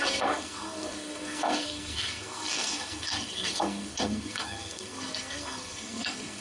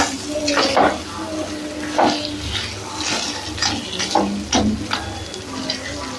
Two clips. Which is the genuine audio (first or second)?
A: second